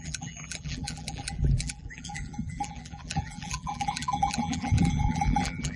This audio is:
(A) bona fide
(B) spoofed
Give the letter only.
B